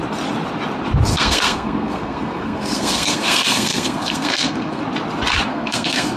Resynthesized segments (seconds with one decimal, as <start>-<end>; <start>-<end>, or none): 1.1-4.8; 5.5-6.2